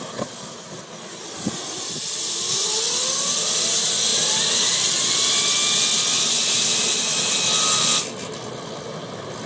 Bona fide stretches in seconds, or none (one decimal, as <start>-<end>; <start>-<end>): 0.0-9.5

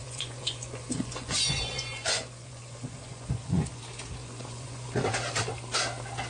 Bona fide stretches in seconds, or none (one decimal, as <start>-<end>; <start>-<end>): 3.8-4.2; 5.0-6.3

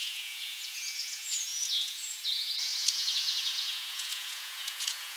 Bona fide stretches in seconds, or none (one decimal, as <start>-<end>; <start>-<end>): none

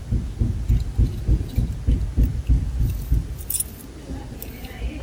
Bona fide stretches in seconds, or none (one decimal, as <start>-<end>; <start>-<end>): 0.0-5.0